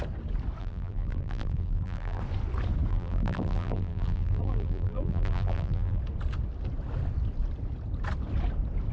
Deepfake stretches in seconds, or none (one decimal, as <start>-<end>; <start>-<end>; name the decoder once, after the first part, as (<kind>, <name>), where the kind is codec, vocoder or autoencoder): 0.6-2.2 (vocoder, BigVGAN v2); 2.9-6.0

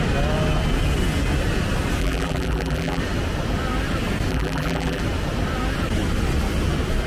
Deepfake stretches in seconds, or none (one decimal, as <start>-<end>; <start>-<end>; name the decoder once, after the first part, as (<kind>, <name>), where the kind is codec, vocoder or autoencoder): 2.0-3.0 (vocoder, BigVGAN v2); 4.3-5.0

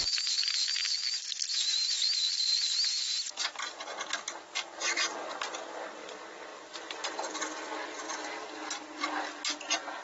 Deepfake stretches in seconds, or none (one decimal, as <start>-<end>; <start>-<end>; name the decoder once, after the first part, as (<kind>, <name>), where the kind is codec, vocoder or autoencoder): 2.3-3.0 (vocoder, BigVGAN v2); 6.5-7.4